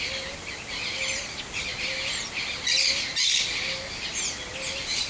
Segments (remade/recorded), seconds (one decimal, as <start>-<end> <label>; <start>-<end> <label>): 0.0-5.1 recorded